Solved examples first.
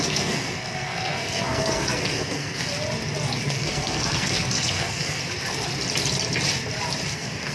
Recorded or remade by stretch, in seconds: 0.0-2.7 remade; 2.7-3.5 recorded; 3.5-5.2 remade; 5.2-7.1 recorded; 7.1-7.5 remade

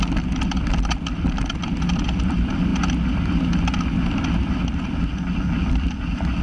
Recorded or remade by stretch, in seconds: 0.0-6.4 recorded

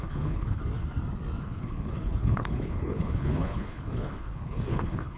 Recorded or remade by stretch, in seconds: 0.0-0.6 remade; 0.6-1.4 recorded; 1.4-5.2 remade

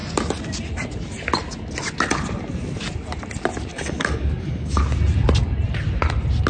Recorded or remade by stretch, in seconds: 0.0-3.7 recorded; 3.7-4.8 remade; 4.8-6.5 recorded

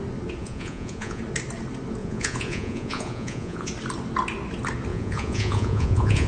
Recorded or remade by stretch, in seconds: 0.0-0.4 recorded; 0.4-1.2 remade; 1.2-2.0 recorded; 2.0-3.7 remade; 3.7-4.9 recorded; 4.9-6.3 remade